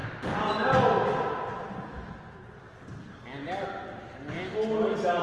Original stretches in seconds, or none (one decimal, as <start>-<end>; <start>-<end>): 0.0-5.2